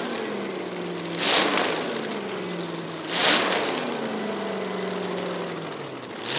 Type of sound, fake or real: real